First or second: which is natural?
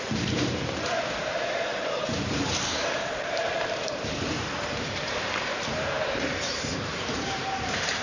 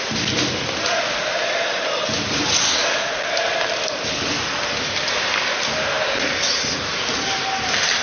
second